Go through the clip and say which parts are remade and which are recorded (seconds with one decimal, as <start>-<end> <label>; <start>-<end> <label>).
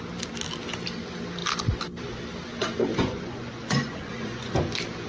0.0-2.9 recorded; 2.9-4.6 remade; 4.6-5.1 recorded